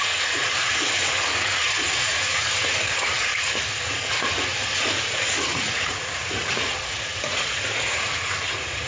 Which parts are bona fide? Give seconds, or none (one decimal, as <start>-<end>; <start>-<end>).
3.3-4.1